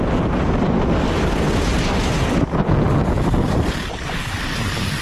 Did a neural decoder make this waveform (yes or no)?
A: no